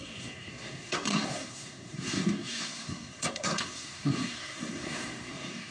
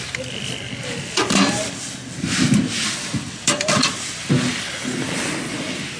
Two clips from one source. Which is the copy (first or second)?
first